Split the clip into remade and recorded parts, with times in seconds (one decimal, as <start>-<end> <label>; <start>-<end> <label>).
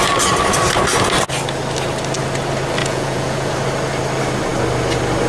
0.0-2.8 recorded; 2.8-3.5 remade; 3.5-5.3 recorded